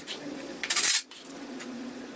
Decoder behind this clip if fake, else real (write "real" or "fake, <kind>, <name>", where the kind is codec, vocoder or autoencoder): fake, vocoder, Vocos